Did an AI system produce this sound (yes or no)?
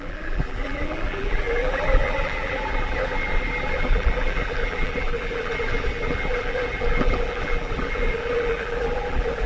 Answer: yes